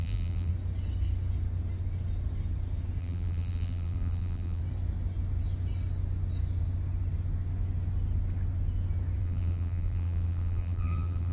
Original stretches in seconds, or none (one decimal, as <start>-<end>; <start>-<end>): 0.5-3.0; 4.6-9.2